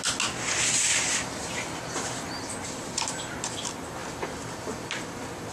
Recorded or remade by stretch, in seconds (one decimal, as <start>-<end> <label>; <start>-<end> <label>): 0.0-5.5 recorded

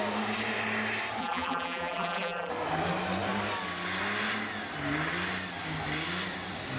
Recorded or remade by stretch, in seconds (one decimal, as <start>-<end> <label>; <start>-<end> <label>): 0.0-1.2 recorded; 1.2-2.5 remade; 2.5-6.8 recorded

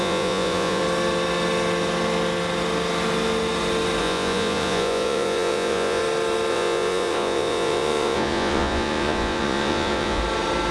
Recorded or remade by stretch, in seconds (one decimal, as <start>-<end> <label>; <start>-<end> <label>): 0.0-0.8 remade; 0.8-4.0 recorded; 4.0-6.0 remade; 6.0-6.5 recorded; 6.5-10.2 remade; 10.2-10.7 recorded

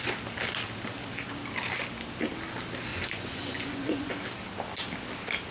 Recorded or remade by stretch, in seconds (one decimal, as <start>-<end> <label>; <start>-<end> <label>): 0.0-2.9 recorded; 2.9-4.1 remade; 4.1-5.5 recorded